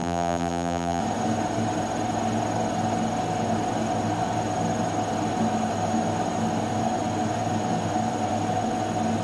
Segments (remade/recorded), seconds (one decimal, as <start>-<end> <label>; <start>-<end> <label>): 0.0-1.0 remade; 1.0-9.2 recorded